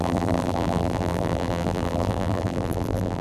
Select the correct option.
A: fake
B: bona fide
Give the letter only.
A